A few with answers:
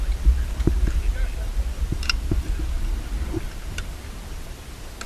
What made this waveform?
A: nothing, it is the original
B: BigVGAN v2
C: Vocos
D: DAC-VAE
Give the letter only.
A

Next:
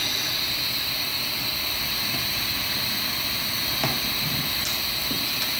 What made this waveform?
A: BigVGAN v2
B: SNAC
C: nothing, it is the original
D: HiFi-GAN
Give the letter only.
C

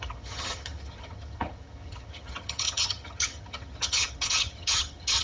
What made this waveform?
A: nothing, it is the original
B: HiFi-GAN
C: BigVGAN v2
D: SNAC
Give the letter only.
B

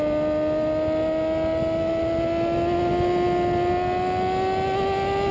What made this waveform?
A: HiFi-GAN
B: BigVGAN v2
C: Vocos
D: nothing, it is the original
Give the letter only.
D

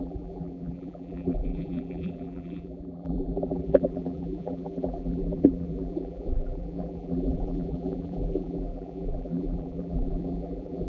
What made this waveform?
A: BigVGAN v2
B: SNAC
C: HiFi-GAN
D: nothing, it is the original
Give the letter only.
A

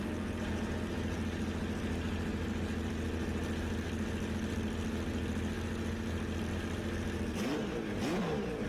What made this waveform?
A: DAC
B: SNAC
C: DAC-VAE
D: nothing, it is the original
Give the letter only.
D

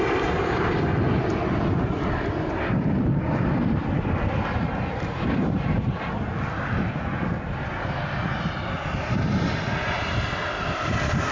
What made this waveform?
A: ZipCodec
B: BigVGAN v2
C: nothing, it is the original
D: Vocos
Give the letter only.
C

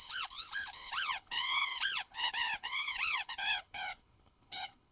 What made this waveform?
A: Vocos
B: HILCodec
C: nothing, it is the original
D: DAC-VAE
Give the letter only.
B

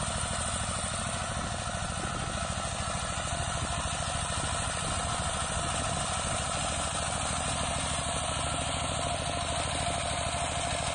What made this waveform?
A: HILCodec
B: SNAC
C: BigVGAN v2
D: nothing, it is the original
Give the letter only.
D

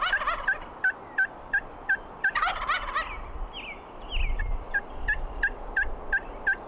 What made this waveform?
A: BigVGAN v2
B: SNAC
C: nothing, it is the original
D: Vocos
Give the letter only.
C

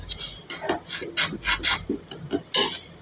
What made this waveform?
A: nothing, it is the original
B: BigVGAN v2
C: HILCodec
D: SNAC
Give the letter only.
A